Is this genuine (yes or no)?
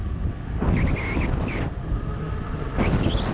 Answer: yes